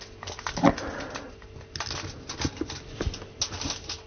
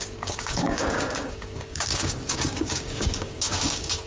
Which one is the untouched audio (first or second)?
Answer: first